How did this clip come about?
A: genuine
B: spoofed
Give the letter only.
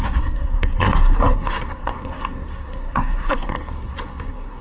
B